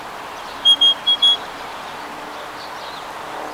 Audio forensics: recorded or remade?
recorded